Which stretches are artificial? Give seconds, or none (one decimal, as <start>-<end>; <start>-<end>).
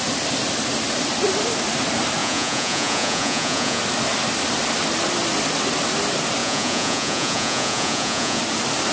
2.2-3.8; 6.4-8.4